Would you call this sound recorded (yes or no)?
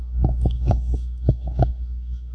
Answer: no